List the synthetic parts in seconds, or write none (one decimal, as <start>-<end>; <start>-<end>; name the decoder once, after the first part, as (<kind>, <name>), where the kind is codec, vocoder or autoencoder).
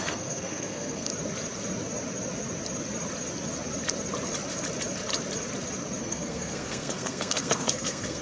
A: 0.0-1.1 (codec, SNAC); 6.0-8.2